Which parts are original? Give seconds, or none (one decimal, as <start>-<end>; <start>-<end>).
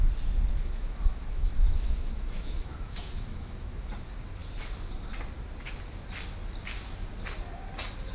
0.0-0.6; 3.9-8.1